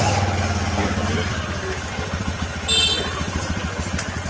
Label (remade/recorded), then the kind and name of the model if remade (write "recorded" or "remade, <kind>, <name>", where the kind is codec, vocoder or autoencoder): recorded